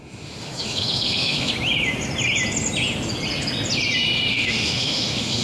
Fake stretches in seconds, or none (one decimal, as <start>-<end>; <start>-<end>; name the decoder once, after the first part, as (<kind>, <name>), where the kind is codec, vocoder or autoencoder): 0.0-1.5 (autoencoder, DAC-VAE); 4.3-5.4

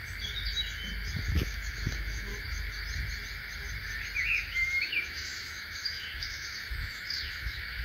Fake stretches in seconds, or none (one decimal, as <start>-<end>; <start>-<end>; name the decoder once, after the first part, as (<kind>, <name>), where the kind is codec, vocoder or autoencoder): 1.3-2.3 (autoencoder, DAC-VAE); 4.2-7.8